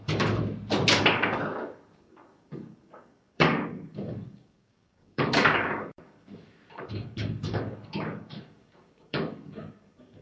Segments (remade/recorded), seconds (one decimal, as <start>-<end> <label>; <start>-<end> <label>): 0.0-0.4 remade; 0.4-1.0 recorded; 1.0-10.2 remade